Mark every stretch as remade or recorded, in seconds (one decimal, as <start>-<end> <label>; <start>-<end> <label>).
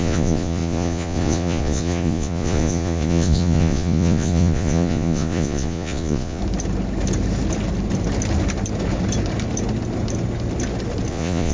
0.0-6.4 remade; 6.4-11.1 recorded; 11.1-11.5 remade